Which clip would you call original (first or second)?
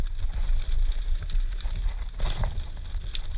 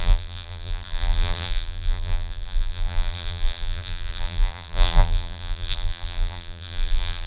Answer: first